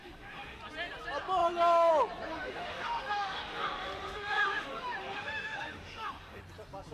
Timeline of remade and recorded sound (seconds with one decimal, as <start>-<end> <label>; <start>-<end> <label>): 0.0-0.6 remade; 0.6-2.3 recorded; 2.3-6.4 remade; 6.4-6.9 recorded